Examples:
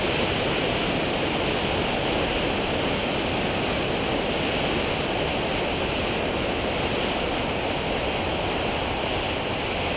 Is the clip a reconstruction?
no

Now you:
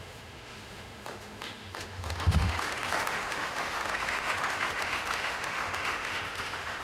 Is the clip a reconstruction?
yes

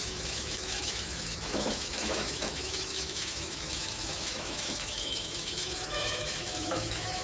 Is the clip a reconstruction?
yes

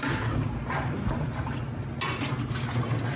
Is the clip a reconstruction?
no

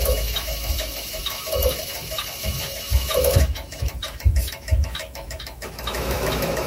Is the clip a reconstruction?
yes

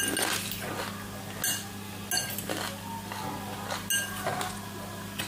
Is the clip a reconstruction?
no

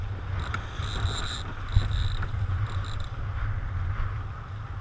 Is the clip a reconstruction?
no